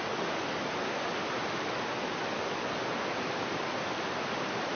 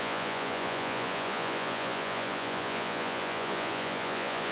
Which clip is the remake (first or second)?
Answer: second